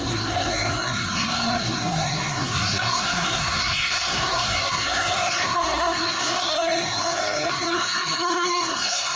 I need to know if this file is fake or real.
fake